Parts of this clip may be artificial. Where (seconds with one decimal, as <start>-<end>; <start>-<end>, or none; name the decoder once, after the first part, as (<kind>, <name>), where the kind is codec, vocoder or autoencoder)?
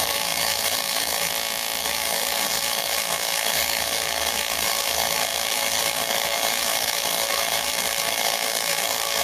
0.0-1.3 (codec, SNAC); 1.8-9.2